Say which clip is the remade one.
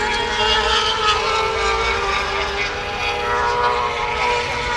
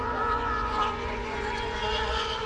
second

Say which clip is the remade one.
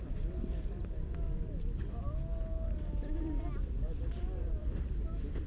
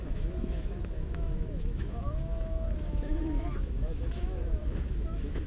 second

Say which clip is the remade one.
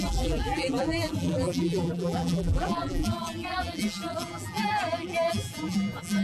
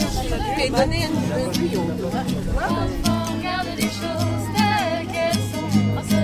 first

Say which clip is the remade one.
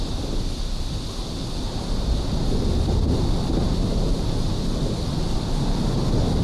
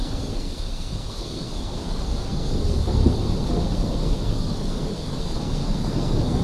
second